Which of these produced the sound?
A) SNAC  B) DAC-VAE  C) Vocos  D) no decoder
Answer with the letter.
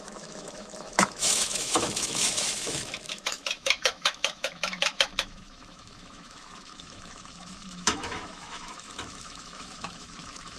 B